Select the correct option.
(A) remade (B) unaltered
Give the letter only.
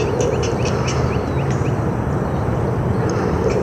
B